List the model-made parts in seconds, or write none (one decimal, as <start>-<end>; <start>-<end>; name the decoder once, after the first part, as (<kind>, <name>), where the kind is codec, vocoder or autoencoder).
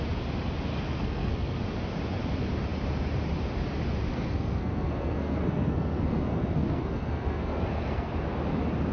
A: 0.7-1.6 (codec, SNAC); 4.1-8.1